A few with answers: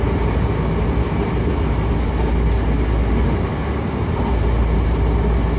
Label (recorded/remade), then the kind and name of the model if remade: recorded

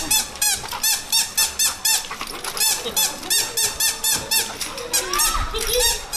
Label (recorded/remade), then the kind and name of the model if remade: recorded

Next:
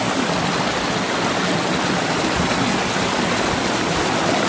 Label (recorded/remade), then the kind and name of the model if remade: recorded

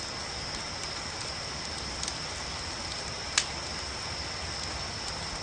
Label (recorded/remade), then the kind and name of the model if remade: recorded